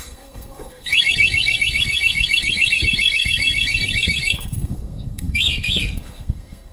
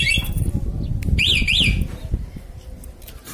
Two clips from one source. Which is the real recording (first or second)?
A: second